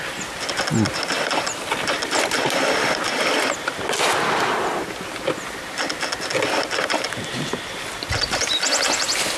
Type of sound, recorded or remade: recorded